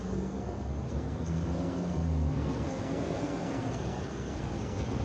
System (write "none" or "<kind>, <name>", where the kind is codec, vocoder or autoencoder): codec, SNAC